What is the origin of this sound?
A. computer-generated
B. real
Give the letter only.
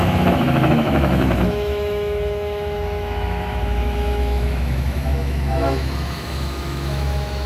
A